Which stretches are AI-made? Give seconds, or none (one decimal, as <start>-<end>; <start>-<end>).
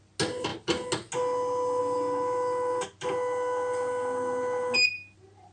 none